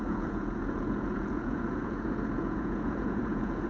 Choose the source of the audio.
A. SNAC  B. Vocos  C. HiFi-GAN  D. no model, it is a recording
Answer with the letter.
B